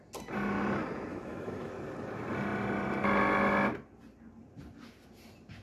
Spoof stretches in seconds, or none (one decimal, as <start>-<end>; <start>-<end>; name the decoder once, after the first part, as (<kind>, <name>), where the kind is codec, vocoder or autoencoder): 1.1-1.7 (autoencoder, DAC-VAE)

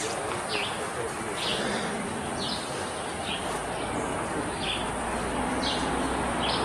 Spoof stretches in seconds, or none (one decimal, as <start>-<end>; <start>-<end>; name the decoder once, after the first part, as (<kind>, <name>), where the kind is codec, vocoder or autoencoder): 1.5-3.4 (vocoder, BigVGAN v2); 4.1-4.9